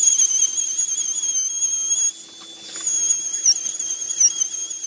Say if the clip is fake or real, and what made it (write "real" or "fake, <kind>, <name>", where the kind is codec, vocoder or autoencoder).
real